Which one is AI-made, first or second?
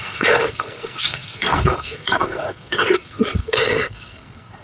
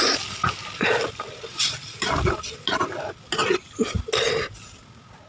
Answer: first